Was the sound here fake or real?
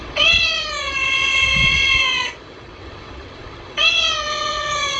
fake